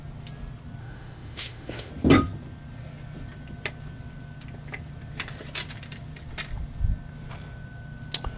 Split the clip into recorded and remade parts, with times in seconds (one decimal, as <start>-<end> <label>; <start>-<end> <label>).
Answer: 0.0-0.8 recorded; 0.8-1.9 remade; 1.9-8.4 recorded